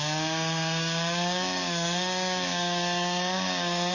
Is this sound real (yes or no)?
no